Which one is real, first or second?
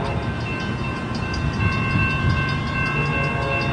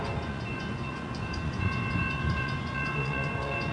first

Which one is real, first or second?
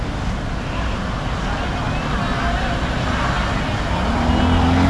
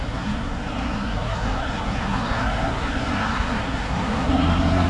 first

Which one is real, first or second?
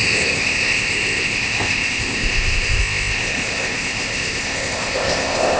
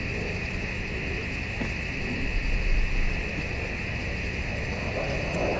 second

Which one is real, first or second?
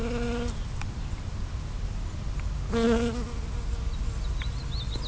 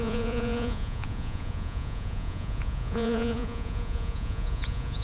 first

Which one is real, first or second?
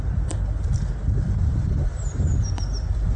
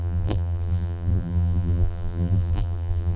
first